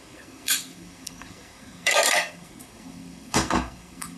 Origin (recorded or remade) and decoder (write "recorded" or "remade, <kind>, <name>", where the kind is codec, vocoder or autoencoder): remade, codec, SNAC